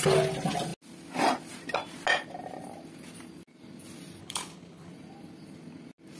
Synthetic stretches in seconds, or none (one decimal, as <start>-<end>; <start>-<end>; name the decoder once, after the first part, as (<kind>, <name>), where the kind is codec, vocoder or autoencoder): 4.2-4.9 (codec, HILCodec)